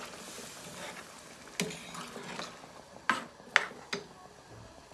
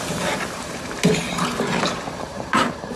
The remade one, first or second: second